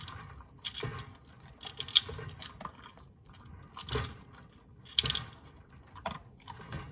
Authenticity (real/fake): real